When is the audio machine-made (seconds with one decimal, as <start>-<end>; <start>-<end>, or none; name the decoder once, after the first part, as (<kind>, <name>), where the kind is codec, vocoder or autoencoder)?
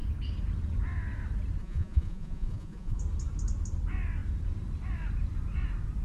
1.6-3.0 (vocoder, Vocos)